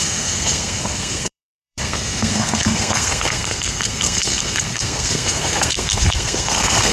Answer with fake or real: fake